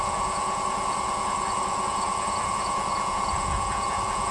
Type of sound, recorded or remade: remade